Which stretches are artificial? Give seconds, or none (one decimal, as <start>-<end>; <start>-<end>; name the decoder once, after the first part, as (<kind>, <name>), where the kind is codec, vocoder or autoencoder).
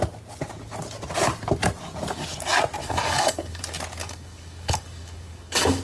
2.8-3.6 (codec, DAC); 4.0-5.8